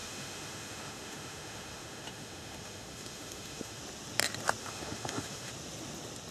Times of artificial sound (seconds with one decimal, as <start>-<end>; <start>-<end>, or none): 0.0-3.8; 4.6-5.5